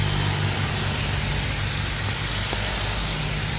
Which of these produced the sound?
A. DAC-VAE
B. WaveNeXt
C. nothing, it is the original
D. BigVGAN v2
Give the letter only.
C